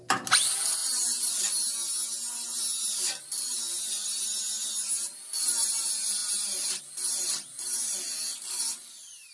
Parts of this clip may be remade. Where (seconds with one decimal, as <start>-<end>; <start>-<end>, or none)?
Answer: none